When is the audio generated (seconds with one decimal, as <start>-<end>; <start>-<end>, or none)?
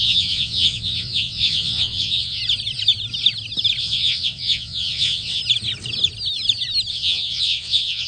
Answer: 0.0-2.4; 3.8-5.4; 6.9-8.1